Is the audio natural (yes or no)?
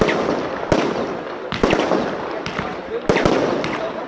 yes